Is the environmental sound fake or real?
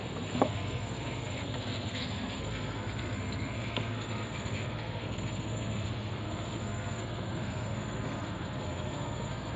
fake